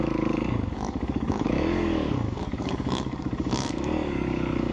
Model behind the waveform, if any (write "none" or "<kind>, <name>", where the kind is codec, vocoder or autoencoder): codec, DAC